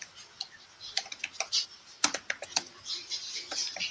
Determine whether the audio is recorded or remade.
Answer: recorded